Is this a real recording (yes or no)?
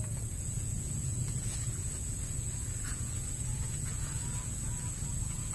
no